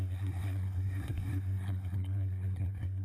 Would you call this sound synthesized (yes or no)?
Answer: yes